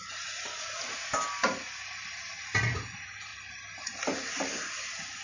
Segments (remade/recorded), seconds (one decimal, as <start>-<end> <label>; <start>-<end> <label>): 0.0-5.2 recorded